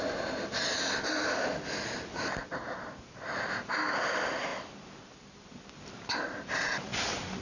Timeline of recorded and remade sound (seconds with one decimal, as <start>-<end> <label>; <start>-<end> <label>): 0.0-7.4 recorded